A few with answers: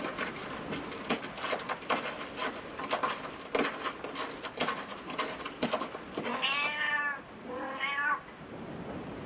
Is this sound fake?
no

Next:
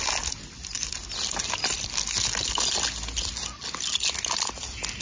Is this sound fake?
no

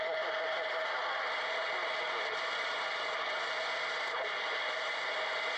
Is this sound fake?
no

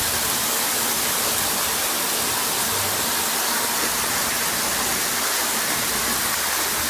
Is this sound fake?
no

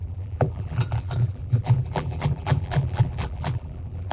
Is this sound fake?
yes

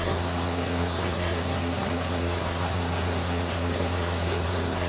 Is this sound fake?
yes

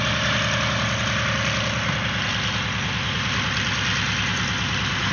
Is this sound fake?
no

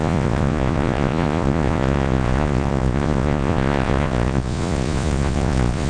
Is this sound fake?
yes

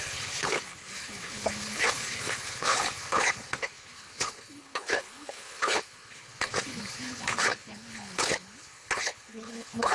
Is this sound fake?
yes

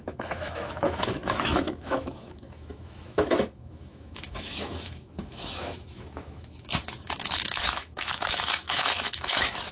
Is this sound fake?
yes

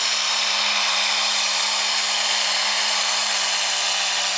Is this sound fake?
no